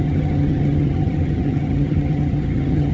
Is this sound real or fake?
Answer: fake